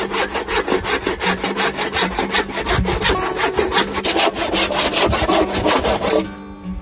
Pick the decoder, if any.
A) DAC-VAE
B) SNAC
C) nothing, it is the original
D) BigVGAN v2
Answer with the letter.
C